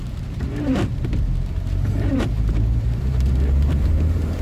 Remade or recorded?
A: remade